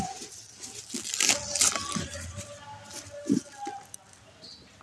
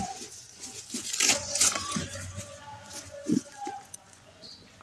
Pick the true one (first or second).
first